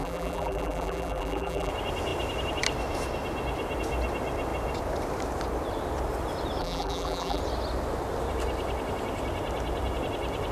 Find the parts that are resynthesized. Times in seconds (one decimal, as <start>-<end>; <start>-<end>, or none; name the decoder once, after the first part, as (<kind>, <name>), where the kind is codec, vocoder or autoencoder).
0.0-1.7 (vocoder, BigVGAN v2); 6.6-7.4